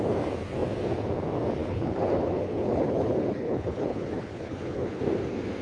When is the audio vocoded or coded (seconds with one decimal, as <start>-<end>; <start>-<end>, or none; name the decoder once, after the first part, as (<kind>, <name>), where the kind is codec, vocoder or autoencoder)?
1.6-5.0 (codec, HILCodec)